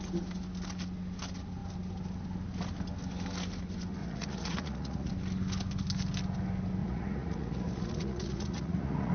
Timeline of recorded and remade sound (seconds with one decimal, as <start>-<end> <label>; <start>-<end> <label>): 0.0-4.0 recorded; 4.0-5.1 remade; 5.1-6.8 recorded; 6.8-9.1 remade